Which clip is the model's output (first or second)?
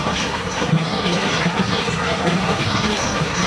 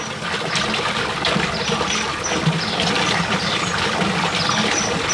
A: first